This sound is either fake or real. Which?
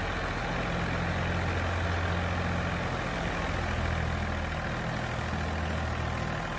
real